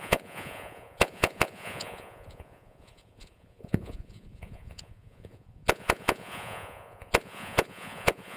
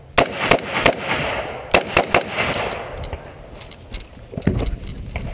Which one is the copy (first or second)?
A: first